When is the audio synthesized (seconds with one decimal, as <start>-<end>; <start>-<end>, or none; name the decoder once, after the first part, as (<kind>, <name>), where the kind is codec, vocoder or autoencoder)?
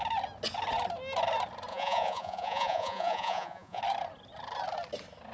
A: 1.7-3.8 (vocoder, Vocos)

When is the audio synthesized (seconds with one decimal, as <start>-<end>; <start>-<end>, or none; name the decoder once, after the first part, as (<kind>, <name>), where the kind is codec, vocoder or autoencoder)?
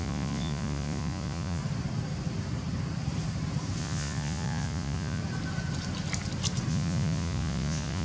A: 0.0-1.6 (vocoder, Vocos); 3.8-5.2; 6.7-8.0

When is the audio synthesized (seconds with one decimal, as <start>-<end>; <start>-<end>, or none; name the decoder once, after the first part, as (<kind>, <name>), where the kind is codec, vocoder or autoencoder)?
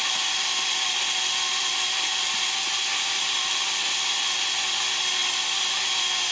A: none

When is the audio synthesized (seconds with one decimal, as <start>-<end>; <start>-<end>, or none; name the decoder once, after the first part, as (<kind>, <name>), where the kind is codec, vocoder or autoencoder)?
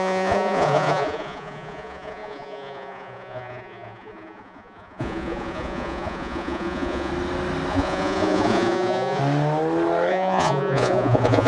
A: 0.0-7.1 (vocoder, Vocos); 7.7-9.2; 10.1-11.5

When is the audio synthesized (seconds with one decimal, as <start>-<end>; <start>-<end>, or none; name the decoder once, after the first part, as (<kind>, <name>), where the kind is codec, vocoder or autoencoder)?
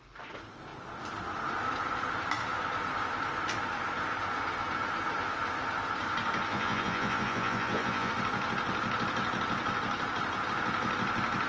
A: 6.5-8.1 (vocoder, Vocos)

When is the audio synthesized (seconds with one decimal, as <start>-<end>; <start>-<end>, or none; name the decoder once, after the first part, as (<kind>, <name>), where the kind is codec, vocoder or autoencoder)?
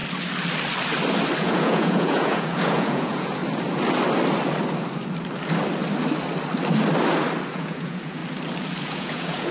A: 1.4-3.4 (vocoder, Vocos); 7.5-8.2; 8.8-9.5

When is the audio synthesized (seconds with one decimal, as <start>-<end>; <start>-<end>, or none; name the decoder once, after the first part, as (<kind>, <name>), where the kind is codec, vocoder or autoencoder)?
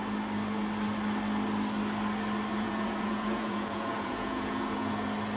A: 2.5-4.9 (vocoder, Vocos)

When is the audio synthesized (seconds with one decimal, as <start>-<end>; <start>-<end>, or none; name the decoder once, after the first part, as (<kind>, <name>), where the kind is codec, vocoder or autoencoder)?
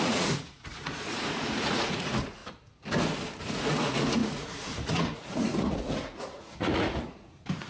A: 0.0-2.4 (vocoder, Vocos); 3.4-7.7